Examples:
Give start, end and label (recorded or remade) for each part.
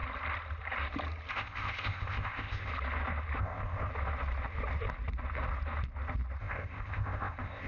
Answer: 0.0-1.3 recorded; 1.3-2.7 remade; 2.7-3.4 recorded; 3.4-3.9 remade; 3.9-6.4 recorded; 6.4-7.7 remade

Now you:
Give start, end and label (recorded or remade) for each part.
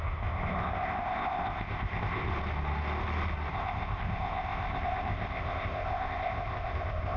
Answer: 0.0-2.3 remade; 2.3-3.5 recorded; 3.5-7.2 remade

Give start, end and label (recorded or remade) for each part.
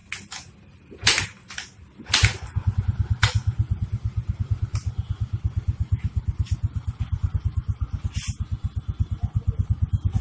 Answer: 0.0-10.2 recorded